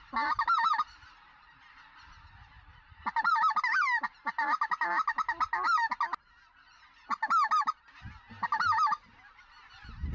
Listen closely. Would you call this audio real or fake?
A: real